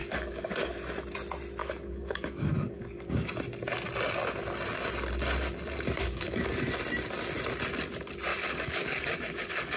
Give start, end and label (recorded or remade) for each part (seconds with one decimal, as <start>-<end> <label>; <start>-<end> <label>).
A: 0.0-0.8 remade; 0.8-1.6 recorded; 1.6-3.1 remade; 3.1-6.0 recorded; 6.0-6.7 remade; 6.7-8.3 recorded; 8.3-9.8 remade